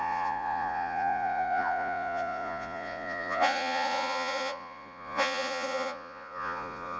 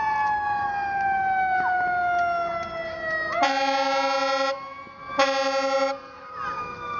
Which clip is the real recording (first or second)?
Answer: second